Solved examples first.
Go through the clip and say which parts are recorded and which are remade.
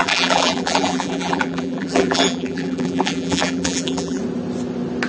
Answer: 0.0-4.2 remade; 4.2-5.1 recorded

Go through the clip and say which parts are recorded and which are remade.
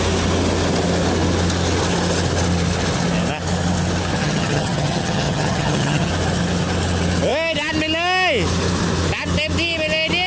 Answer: 0.0-4.2 recorded; 4.2-6.1 remade; 6.1-10.3 recorded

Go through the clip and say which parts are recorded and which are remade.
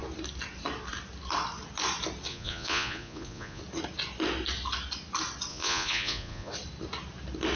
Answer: 0.0-2.3 recorded; 2.3-3.6 remade; 3.6-5.5 recorded; 5.5-6.5 remade; 6.5-7.6 recorded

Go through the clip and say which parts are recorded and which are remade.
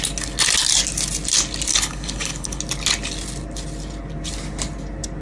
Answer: 0.0-1.7 recorded; 1.7-2.6 remade; 2.6-5.2 recorded